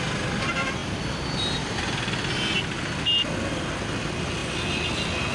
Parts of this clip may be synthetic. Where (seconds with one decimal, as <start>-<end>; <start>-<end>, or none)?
none

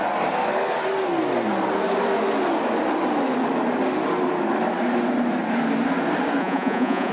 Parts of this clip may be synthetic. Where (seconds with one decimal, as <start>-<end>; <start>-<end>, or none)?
6.4-7.1

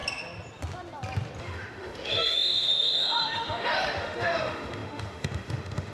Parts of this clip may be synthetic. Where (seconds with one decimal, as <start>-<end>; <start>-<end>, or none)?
1.4-5.9

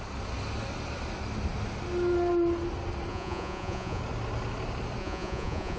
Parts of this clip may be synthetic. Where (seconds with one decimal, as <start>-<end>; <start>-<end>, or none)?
3.1-4.0; 5.0-5.8

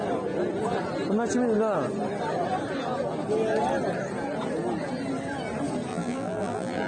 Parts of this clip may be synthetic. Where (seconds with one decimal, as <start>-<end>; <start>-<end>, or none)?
5.9-6.9

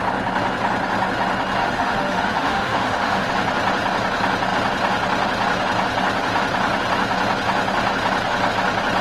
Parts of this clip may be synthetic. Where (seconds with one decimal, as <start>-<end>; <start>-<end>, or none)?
1.6-3.3